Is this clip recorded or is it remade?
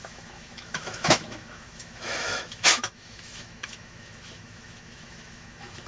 remade